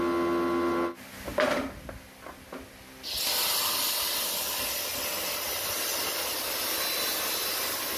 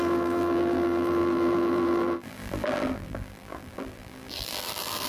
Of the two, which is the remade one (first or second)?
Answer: second